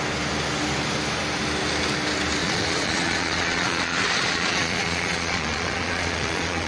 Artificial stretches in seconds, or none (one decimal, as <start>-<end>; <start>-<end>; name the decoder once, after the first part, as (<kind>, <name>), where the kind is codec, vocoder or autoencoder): 2.4-6.7 (vocoder, Vocos)